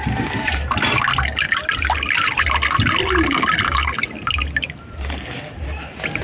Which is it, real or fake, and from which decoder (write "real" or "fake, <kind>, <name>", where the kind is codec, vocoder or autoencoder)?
real